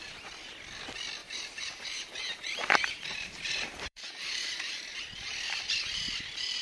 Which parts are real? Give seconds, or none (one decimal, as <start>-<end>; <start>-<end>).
0.0-1.2; 4.9-6.6